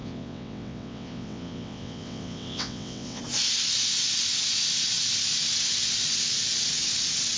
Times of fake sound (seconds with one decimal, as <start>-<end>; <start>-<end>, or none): 0.0-3.2